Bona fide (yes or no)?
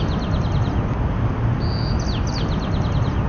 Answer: yes